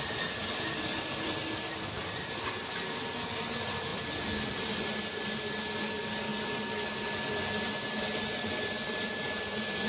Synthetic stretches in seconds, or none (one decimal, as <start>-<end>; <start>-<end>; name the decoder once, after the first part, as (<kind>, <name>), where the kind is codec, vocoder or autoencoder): none